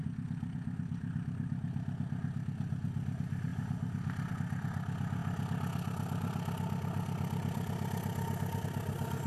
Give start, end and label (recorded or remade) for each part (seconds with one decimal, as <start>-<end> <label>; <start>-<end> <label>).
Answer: 0.0-9.3 recorded